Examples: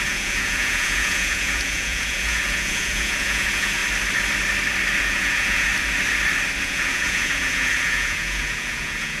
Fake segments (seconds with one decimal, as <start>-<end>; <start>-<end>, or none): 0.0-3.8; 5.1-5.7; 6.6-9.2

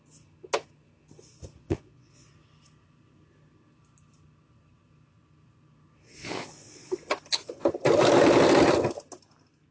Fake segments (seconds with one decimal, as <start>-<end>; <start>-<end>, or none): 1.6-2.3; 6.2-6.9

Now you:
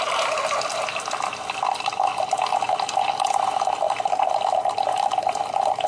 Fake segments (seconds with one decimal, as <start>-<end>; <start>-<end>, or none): none

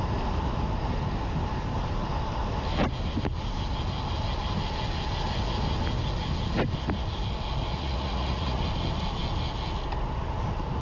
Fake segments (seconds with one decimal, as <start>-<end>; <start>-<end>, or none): 7.7-8.6

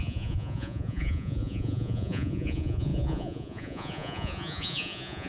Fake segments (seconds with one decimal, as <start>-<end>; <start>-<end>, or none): 0.0-5.3